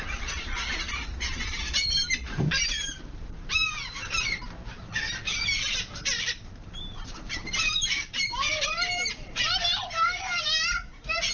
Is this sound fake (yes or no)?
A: yes